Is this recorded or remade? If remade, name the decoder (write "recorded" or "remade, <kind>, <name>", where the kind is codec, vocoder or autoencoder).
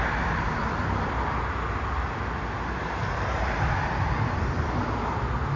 recorded